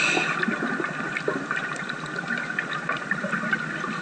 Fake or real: real